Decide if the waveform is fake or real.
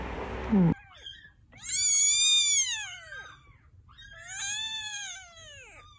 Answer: real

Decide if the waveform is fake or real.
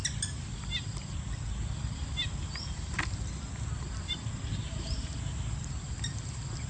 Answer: real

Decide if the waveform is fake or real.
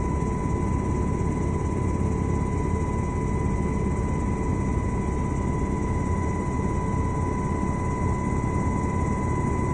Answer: real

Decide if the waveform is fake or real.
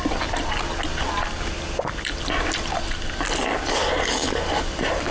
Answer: real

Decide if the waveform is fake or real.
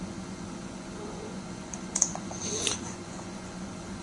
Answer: fake